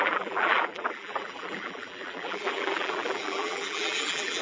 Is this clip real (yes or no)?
no